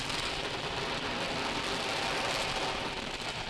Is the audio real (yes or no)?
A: yes